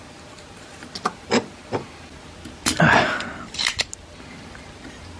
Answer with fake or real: real